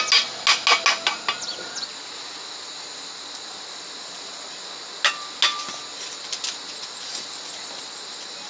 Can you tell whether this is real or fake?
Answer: real